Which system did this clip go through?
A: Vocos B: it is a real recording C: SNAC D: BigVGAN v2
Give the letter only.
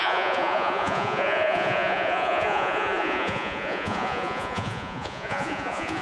A